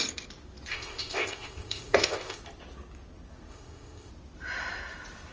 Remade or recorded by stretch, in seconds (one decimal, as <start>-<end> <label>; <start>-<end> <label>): 0.0-0.7 recorded; 0.7-2.4 remade; 2.4-3.5 recorded; 3.5-4.1 remade; 4.1-5.3 recorded